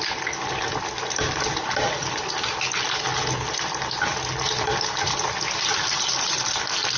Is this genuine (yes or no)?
yes